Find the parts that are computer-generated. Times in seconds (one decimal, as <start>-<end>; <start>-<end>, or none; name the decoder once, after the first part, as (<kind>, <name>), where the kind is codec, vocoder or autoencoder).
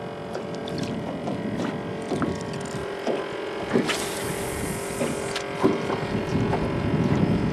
none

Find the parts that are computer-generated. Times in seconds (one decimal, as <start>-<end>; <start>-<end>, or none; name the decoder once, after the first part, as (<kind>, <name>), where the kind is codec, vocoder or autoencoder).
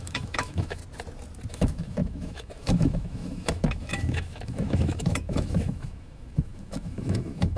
0.0-0.8 (autoencoder, DAC-VAE); 1.5-7.6